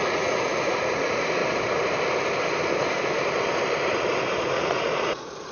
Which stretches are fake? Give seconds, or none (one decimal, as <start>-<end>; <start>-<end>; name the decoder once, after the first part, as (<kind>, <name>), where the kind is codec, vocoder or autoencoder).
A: 0.0-1.4 (vocoder, Vocos); 4.5-5.5